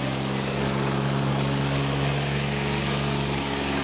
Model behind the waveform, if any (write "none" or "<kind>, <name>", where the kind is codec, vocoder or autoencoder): codec, DAC